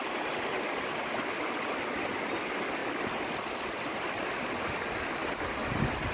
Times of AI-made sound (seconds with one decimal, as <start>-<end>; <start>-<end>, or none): 2.8-4.3; 5.2-6.1